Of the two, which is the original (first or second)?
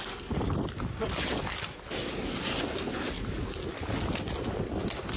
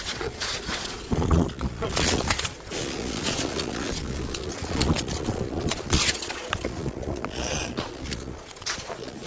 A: first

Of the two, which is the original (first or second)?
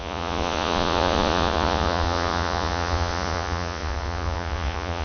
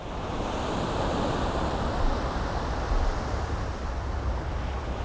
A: second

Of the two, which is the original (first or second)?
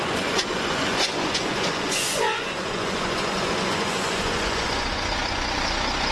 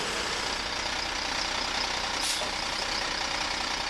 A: second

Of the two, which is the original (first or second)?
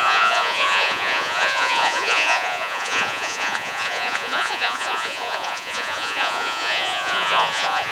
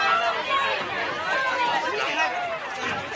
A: second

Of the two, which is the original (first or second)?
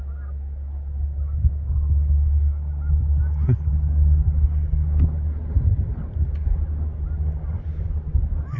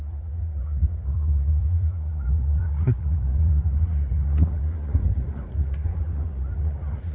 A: first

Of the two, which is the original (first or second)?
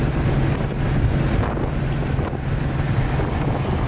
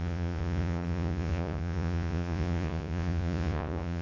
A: first